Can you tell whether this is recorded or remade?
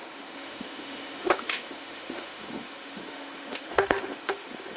remade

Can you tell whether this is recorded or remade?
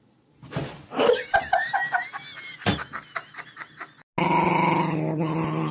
recorded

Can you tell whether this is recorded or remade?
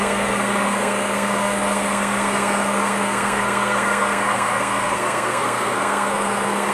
remade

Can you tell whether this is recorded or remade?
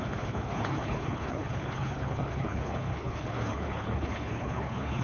remade